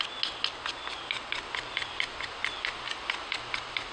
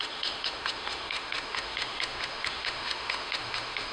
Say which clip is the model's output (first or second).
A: second